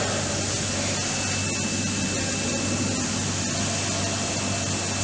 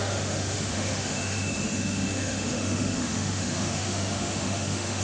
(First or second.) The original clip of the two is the first